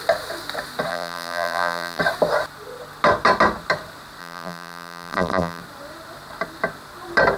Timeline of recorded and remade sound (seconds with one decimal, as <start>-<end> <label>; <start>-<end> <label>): 0.0-0.9 recorded; 0.9-2.0 remade; 2.0-4.2 recorded; 4.2-5.6 remade; 5.6-7.4 recorded